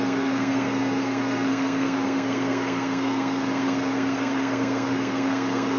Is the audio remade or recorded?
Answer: remade